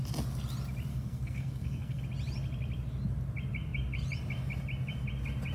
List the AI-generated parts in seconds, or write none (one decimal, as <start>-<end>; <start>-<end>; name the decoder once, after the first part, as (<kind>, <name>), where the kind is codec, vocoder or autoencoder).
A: 0.9-2.0 (codec, SNAC)